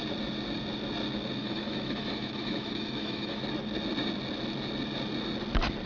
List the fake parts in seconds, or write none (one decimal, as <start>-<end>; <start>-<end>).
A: 1.4-3.4